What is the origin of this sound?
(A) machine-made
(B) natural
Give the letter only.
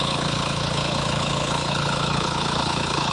A